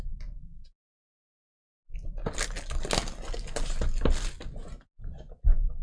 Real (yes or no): yes